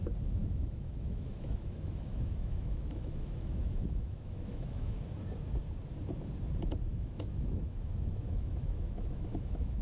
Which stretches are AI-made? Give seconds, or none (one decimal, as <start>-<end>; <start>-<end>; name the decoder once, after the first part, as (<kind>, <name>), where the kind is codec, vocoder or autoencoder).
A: 0.4-5.0 (autoencoder, DAC-VAE); 6.9-9.8